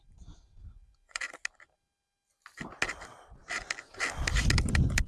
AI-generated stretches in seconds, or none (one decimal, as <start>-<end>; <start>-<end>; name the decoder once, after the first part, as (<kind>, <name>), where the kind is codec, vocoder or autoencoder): 0.7-1.2 (vocoder, Vocos)